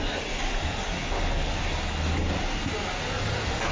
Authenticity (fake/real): real